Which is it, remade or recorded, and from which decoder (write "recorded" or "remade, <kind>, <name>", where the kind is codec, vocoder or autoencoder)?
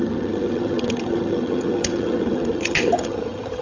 remade, vocoder, HiFi-GAN